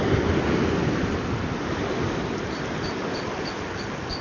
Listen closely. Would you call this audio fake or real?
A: real